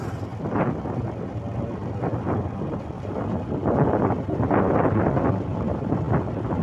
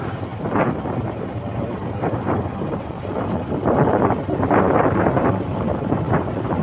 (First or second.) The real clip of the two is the first